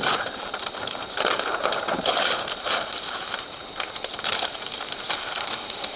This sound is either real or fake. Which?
fake